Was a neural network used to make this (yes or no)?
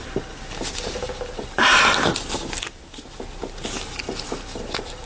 no